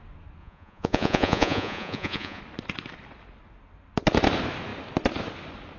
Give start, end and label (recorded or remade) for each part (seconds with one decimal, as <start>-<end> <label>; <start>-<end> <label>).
0.0-0.4 recorded; 0.4-2.4 remade; 2.4-5.8 recorded